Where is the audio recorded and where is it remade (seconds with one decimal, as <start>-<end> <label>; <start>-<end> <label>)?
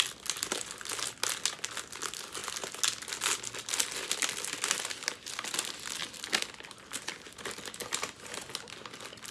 0.0-9.3 recorded